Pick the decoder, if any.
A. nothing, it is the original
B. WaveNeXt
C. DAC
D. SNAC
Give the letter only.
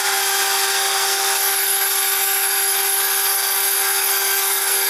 D